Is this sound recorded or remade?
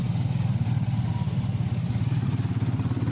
recorded